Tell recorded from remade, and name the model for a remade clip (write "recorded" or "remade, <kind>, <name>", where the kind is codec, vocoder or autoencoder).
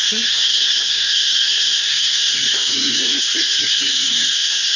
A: remade, codec, SNAC